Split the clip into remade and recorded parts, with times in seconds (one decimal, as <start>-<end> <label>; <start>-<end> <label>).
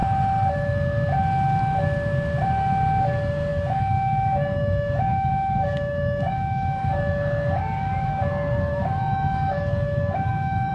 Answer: 0.0-3.0 recorded; 3.0-10.7 remade